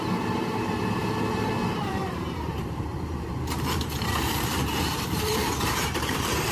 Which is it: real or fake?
fake